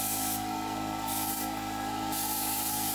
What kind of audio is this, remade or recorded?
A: remade